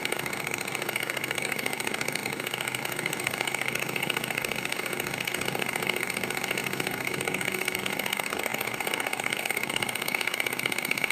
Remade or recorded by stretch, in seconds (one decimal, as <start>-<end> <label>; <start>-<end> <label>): 0.0-11.1 remade